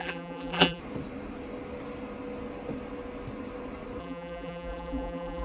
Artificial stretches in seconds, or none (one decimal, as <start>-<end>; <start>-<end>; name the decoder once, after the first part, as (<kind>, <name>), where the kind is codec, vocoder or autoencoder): 0.0-0.8 (vocoder, BigVGAN v2); 4.0-5.4